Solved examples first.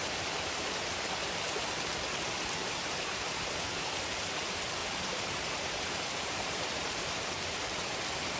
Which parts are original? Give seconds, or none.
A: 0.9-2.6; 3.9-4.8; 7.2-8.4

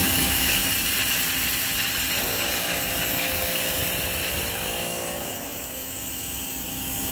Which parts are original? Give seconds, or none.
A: 0.6-2.2; 3.8-4.5

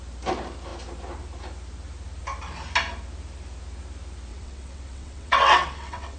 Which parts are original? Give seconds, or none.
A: 0.0-4.3